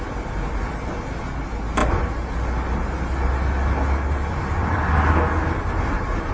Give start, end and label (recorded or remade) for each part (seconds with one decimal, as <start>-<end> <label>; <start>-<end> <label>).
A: 0.0-6.3 recorded